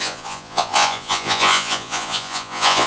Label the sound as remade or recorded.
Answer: remade